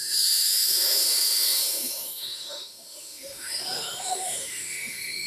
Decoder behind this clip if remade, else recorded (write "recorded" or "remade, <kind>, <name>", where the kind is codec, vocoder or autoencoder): remade, autoencoder, DAC-VAE